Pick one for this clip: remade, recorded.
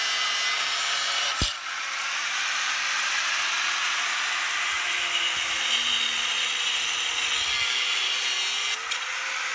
recorded